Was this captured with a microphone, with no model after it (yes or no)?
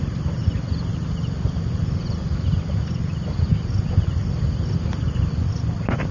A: yes